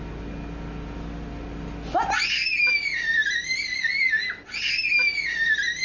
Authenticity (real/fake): real